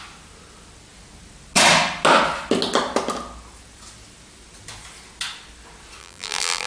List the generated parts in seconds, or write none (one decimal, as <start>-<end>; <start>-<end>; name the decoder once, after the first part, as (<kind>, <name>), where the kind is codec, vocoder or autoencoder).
6.0-6.7 (vocoder, BigVGAN v2)